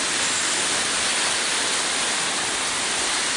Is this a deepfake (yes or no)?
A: no